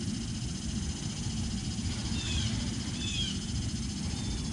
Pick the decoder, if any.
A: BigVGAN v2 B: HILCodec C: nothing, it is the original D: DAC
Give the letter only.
C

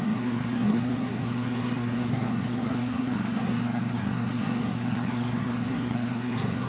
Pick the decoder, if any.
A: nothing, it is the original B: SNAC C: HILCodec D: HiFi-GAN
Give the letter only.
B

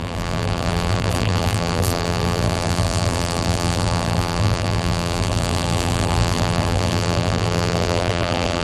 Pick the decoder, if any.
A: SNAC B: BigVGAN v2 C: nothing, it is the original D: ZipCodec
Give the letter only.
B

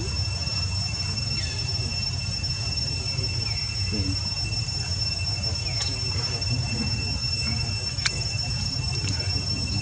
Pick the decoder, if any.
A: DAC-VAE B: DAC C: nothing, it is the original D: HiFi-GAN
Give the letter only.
C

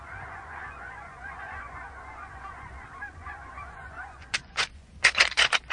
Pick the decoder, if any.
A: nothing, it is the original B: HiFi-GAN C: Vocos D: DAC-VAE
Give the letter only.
C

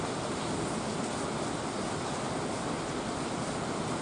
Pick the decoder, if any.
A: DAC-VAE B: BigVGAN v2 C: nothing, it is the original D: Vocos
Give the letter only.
C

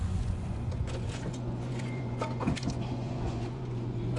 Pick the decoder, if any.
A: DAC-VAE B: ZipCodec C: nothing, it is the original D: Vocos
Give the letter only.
D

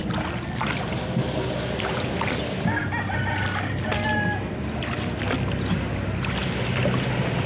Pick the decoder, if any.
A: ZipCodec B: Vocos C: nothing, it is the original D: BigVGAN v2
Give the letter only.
C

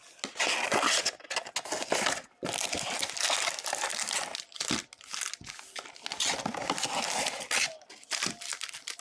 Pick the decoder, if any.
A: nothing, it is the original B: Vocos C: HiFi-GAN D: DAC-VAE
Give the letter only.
A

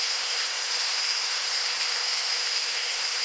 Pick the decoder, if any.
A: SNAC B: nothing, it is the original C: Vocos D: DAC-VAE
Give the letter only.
A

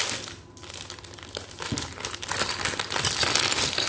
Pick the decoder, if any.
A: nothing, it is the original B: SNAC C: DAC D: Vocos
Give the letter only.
A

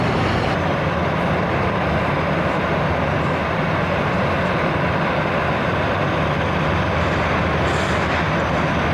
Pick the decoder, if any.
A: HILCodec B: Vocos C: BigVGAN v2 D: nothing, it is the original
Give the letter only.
D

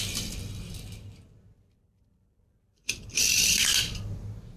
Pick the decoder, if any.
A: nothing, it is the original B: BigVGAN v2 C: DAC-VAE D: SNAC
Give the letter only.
B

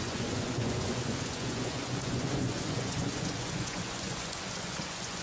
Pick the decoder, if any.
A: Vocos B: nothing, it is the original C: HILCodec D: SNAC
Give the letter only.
A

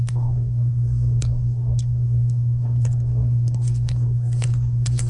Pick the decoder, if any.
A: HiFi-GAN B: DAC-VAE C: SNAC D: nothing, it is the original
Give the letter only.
C